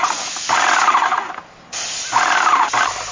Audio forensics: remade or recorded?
recorded